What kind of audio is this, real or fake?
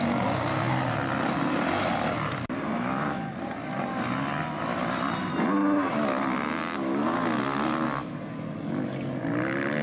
real